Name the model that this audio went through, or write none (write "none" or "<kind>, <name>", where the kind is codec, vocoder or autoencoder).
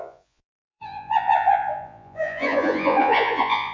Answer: vocoder, Vocos